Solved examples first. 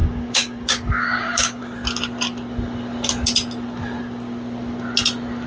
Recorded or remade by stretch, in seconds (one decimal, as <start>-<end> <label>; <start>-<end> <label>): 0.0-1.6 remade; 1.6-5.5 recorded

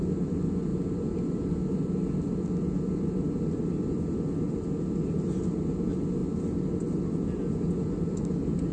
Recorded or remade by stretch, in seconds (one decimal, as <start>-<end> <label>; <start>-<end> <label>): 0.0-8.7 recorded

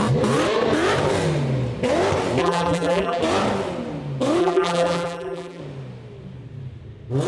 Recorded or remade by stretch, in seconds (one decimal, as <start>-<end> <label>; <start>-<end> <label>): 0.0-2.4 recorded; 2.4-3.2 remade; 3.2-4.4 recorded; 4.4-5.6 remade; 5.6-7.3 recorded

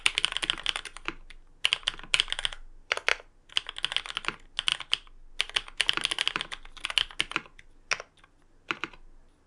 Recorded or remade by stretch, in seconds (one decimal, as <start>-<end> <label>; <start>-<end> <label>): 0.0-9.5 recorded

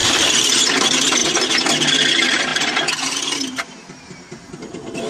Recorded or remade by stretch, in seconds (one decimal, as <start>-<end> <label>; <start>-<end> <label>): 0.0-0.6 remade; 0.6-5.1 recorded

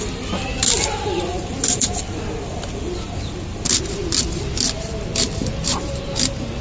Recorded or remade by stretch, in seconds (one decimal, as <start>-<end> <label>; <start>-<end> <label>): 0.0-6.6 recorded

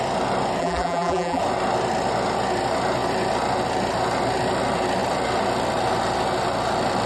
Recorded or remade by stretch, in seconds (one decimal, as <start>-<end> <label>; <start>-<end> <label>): 0.0-0.6 recorded; 0.6-1.4 remade; 1.4-7.1 recorded